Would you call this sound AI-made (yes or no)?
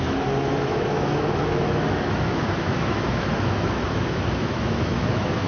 yes